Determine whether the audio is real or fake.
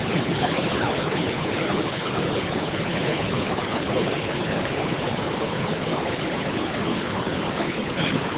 fake